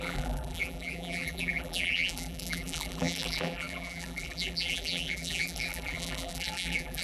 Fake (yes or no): yes